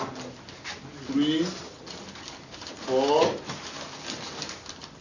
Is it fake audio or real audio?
real